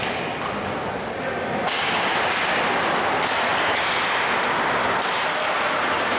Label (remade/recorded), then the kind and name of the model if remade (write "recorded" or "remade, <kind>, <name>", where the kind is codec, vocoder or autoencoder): recorded